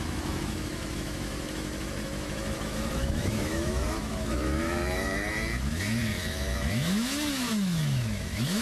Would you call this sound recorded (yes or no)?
no